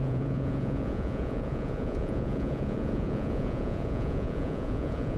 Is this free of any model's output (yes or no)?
no